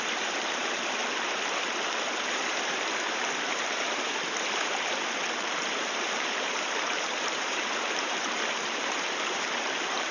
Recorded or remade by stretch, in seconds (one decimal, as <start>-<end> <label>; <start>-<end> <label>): 0.0-1.0 remade; 1.0-2.3 recorded; 2.3-10.1 remade